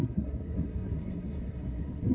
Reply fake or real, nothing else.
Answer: fake